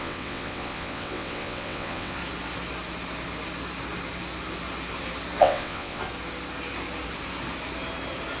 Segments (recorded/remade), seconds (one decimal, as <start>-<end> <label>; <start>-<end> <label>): 0.0-2.2 remade; 2.2-5.4 recorded; 5.4-6.0 remade; 6.0-8.4 recorded